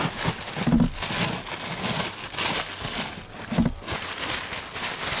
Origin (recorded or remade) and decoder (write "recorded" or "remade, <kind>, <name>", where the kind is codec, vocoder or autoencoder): recorded